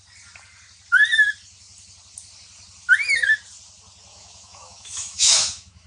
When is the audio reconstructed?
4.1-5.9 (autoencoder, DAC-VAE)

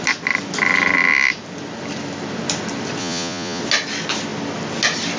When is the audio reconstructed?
3.0-3.6 (vocoder, Vocos)